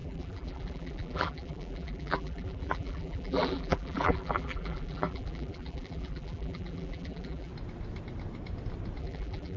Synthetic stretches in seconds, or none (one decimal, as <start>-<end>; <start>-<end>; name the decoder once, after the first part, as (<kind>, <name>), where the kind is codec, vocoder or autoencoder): 0.0-7.5 (vocoder, BigVGAN v2); 9.0-9.6

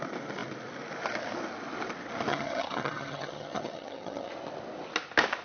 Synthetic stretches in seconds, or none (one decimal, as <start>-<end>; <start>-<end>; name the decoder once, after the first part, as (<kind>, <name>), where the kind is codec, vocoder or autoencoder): 2.3-4.3 (vocoder, HiFi-GAN)

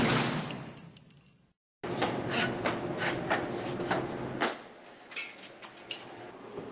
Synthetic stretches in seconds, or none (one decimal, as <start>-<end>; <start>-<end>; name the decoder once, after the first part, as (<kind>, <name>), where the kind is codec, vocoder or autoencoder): none